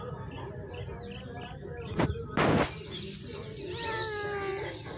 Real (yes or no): yes